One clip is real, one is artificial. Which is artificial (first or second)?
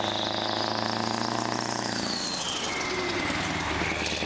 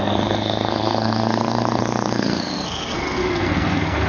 second